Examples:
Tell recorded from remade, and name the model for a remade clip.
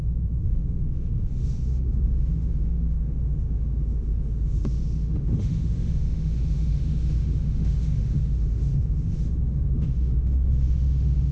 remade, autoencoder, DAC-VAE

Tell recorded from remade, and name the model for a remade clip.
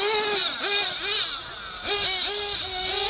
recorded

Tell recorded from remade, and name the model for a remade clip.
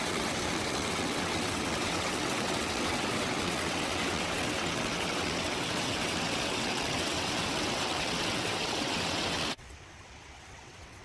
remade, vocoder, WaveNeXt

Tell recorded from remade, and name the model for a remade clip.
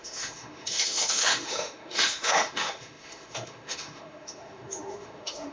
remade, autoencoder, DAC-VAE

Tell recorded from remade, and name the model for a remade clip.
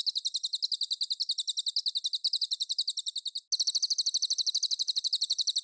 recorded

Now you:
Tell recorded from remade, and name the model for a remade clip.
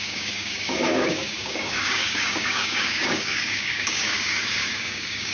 remade, codec, DAC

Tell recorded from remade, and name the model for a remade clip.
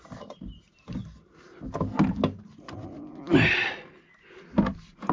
recorded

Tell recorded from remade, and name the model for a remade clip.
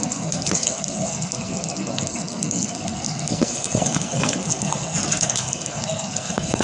remade, codec, SNAC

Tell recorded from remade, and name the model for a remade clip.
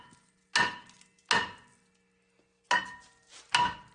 recorded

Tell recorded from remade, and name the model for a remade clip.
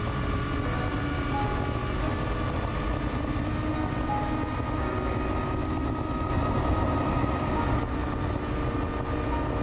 recorded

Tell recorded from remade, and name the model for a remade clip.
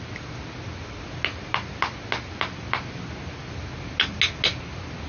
recorded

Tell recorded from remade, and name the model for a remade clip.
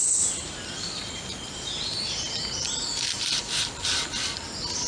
recorded